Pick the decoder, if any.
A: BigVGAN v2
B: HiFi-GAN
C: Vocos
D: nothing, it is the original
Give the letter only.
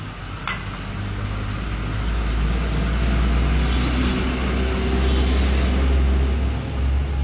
D